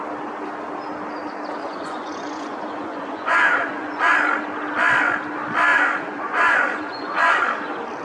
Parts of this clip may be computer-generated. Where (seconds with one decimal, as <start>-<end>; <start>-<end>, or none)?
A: 1.6-4.1; 5.7-7.4